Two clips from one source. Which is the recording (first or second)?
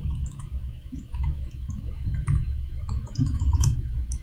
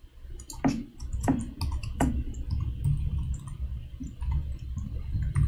second